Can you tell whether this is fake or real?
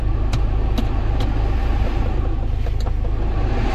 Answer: real